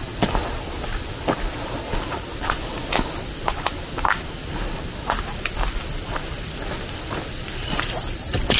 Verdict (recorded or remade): recorded